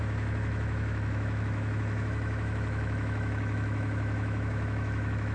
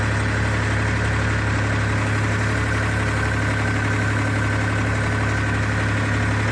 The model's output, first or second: first